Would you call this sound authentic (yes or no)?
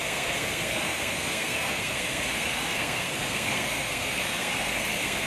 no